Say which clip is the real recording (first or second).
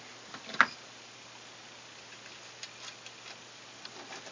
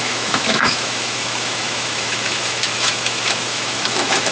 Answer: first